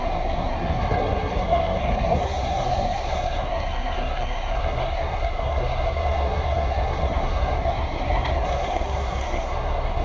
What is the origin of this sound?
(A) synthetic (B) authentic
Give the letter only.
A